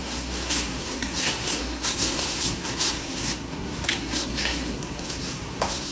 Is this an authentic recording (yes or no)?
no